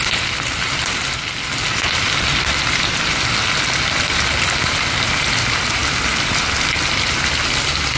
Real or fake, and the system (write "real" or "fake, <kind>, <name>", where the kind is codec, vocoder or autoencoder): real